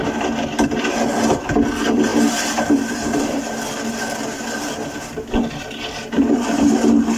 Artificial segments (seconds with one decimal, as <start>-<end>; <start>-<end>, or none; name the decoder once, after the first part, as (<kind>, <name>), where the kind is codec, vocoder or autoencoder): 0.0-0.7 (vocoder, BigVGAN v2); 2.1-6.4